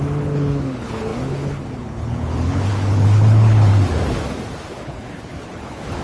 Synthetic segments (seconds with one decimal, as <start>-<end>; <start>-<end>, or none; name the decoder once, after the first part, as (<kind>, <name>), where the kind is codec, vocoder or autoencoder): 0.0-3.7 (codec, HILCodec); 4.7-6.0